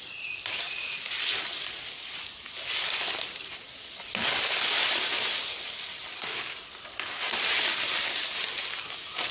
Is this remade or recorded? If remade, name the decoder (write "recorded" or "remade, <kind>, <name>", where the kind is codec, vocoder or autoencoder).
recorded